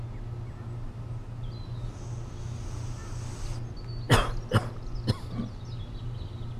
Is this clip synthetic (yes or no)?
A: no